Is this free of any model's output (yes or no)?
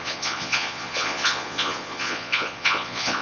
no